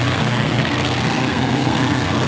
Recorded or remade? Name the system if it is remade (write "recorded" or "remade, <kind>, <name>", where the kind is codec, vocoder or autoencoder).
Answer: remade, codec, SNAC